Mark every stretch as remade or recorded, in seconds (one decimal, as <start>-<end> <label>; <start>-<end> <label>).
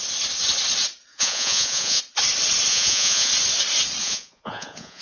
0.0-1.1 recorded; 1.1-2.0 remade; 2.0-2.7 recorded; 2.7-3.3 remade; 3.3-4.0 recorded; 4.0-5.0 remade